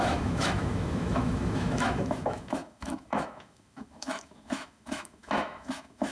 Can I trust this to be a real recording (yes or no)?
no